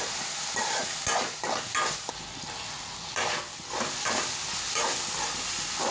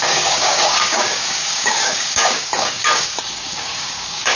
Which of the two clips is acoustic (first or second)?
first